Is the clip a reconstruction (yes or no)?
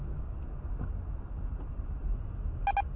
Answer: no